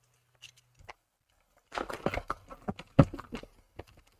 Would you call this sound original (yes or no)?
yes